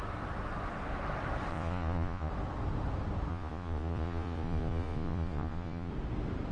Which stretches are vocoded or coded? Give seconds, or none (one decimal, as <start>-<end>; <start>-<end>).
1.5-2.3; 3.3-5.9